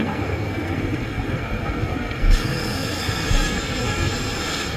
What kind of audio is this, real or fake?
fake